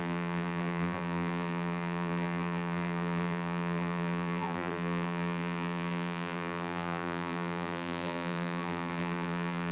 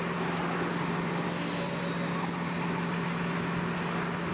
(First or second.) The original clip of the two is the second